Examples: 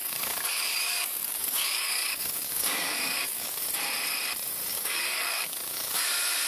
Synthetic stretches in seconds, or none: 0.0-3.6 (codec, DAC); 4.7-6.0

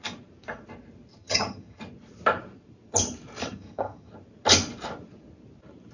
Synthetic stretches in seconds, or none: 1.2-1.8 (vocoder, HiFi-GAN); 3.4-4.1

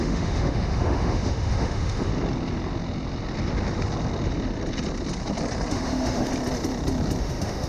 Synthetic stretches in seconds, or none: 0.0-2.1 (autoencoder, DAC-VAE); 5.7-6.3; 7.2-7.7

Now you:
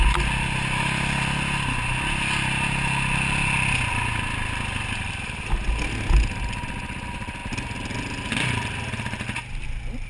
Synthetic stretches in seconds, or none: none

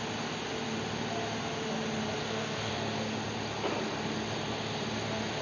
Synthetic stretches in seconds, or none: 2.2-2.7 (codec, SNAC)

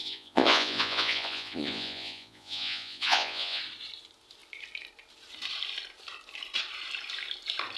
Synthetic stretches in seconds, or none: 0.0-3.6 (vocoder, Vocos)

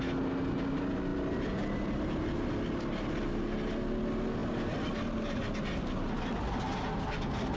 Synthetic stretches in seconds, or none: none